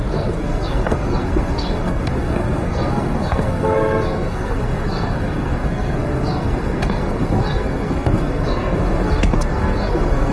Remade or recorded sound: remade